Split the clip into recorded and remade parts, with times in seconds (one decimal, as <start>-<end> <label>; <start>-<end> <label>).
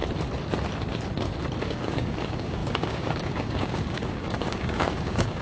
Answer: 0.0-1.6 recorded; 1.6-5.4 remade